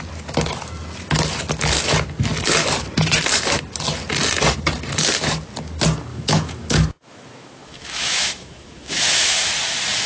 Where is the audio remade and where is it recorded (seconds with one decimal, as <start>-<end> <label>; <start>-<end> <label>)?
0.0-6.1 recorded; 6.1-9.5 remade; 9.5-10.1 recorded